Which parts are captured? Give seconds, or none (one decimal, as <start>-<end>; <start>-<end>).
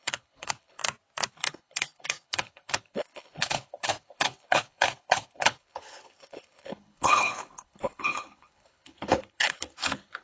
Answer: 0.8-1.3